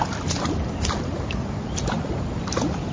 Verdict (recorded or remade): recorded